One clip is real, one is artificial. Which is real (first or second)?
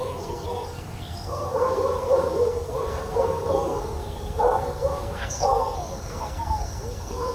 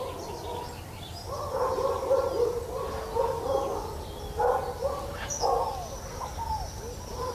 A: second